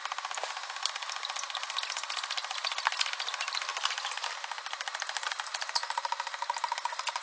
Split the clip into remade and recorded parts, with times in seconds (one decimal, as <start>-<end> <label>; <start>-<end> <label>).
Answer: 0.0-7.2 recorded